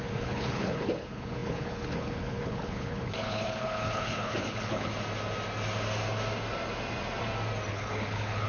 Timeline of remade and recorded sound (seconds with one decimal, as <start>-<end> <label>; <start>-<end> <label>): 0.0-4.9 remade; 4.9-7.7 recorded; 7.7-8.5 remade